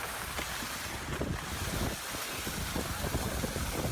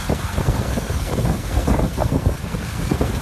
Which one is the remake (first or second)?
second